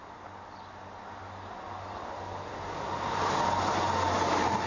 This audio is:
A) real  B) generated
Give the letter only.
A